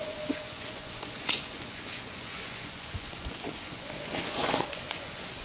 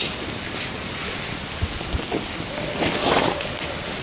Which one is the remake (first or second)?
first